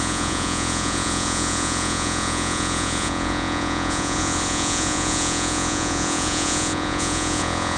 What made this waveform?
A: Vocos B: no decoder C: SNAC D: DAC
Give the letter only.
A